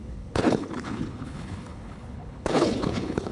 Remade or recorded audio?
remade